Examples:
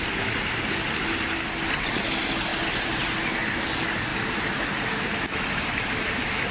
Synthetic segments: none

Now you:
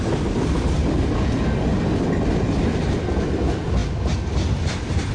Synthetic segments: none

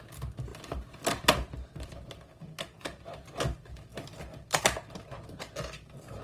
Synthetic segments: none

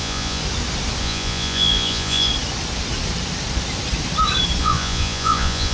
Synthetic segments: 0.0-0.4 (vocoder, Vocos); 1.0-2.3; 4.6-5.7

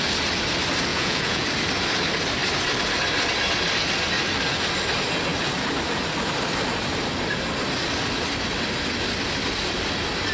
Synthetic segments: 0.9-1.5 (vocoder, Vocos)